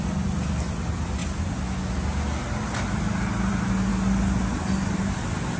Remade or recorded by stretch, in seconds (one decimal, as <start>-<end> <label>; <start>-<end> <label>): 0.0-5.6 recorded